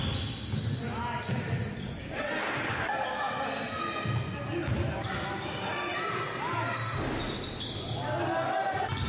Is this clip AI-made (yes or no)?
no